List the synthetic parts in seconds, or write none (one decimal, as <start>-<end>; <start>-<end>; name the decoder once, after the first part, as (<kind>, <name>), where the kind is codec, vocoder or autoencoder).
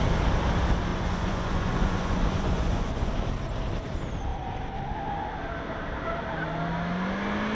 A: 0.9-3.1 (vocoder, Vocos)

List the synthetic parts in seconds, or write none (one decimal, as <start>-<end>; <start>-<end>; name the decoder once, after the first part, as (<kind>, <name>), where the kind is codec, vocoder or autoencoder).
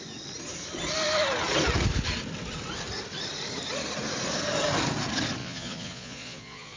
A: 5.4-6.8 (vocoder, Vocos)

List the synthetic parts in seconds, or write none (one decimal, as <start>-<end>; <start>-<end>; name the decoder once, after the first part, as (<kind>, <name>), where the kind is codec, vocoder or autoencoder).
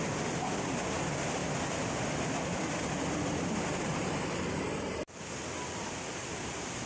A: 1.4-3.5 (vocoder, BigVGAN v2)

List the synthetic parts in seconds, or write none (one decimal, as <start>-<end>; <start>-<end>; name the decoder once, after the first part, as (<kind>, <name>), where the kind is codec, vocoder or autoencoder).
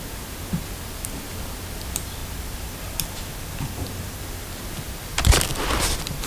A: 2.2-4.5 (vocoder, BigVGAN v2)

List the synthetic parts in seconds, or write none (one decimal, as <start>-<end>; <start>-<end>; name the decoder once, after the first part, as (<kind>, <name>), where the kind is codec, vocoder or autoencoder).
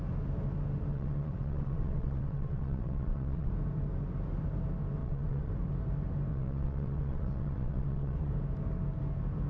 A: 0.9-3.5 (vocoder, WaveNeXt); 5.0-5.5; 6.3-8.3